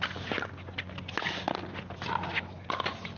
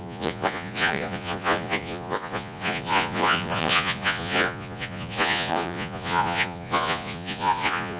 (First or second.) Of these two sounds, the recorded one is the first